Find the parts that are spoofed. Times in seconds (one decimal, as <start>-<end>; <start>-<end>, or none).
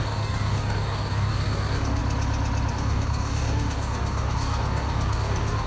0.0-2.0; 2.7-5.7